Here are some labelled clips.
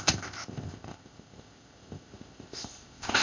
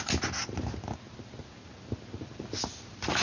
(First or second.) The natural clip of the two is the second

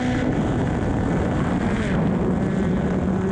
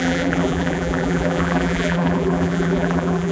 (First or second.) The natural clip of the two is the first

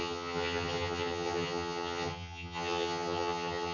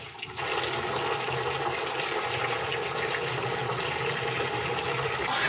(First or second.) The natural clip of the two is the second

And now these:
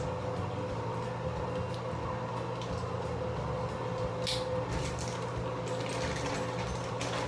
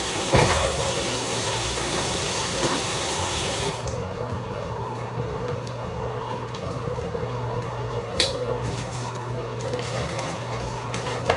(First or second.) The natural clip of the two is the first